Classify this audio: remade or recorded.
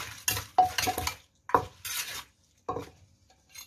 recorded